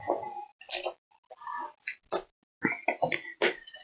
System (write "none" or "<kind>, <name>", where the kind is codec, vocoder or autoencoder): none